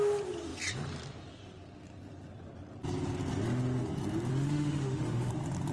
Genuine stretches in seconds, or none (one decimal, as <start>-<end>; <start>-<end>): 0.0-4.3; 5.3-5.7